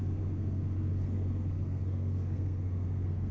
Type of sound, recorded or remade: remade